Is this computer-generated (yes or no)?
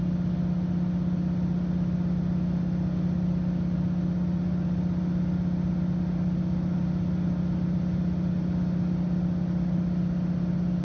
no